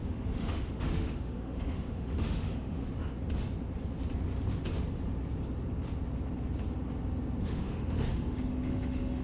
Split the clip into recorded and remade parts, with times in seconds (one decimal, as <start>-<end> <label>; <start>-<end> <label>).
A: 0.0-2.8 remade; 2.8-7.4 recorded; 7.4-9.2 remade